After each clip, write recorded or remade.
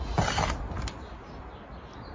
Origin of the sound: recorded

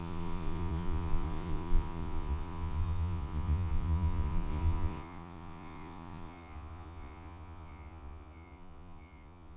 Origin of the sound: remade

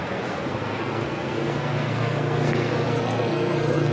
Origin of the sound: remade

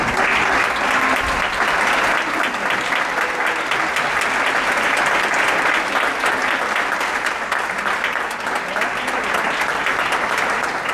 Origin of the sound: recorded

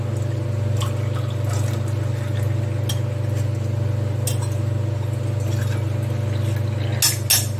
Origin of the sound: recorded